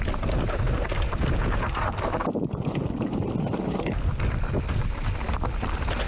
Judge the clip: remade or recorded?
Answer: recorded